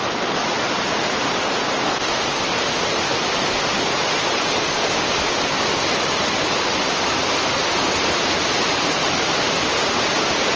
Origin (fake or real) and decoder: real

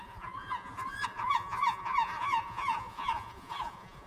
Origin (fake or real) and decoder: fake, vocoder, Vocos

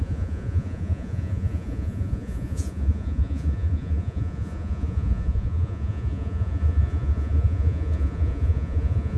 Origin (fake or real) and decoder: fake, vocoder, Vocos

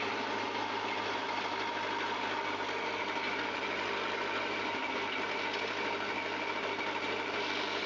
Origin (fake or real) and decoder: real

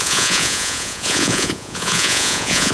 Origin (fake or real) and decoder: fake, vocoder, Vocos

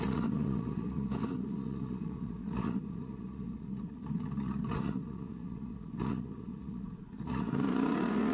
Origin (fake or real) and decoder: fake, vocoder, Vocos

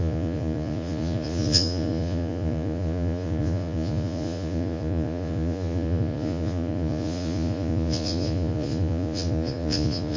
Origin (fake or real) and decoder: fake, vocoder, Vocos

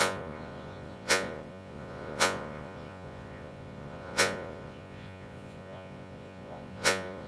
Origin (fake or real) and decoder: fake, vocoder, Vocos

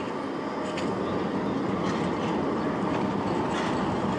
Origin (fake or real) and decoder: real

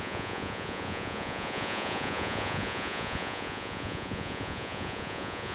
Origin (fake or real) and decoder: fake, vocoder, Vocos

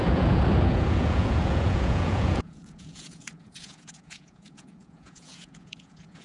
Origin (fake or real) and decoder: fake, vocoder, Vocos